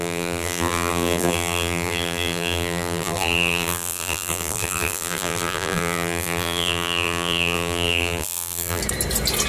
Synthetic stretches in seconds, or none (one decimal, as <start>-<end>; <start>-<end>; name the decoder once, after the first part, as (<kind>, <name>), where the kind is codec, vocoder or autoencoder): 0.0-8.8 (vocoder, BigVGAN v2)

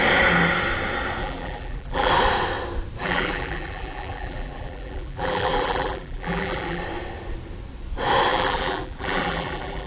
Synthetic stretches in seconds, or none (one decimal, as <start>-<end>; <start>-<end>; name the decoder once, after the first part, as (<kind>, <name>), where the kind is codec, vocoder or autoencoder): 1.2-2.1 (vocoder, BigVGAN v2); 3.0-6.8; 8.3-9.9

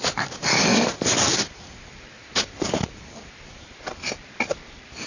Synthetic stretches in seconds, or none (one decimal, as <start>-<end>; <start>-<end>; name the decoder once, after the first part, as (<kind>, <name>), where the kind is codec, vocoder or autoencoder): 0.7-3.8 (vocoder, BigVGAN v2)

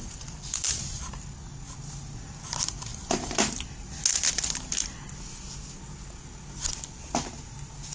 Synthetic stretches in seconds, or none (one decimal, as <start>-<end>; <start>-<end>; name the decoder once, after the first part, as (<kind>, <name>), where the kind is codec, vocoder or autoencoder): 0.0-1.0 (vocoder, BigVGAN v2); 2.9-3.5

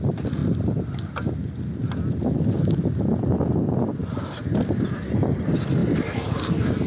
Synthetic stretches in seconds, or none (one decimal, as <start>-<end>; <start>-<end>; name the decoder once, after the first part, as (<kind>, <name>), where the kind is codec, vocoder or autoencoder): 4.0-4.6 (vocoder, BigVGAN v2); 5.8-6.9

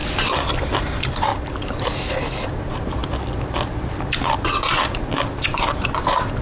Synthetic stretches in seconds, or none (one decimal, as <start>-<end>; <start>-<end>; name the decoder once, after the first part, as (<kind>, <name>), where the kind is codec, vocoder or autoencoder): 0.6-1.3 (vocoder, BigVGAN v2); 2.5-3.0; 5.4-6.4

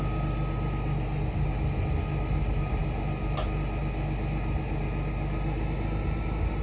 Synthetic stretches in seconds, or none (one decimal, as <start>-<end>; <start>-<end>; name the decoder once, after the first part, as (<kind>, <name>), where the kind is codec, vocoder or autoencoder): none

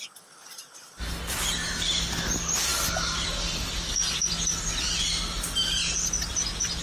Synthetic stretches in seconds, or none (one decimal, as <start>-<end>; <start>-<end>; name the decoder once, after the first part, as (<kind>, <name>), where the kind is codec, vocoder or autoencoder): 2.7-4.7 (vocoder, BigVGAN v2)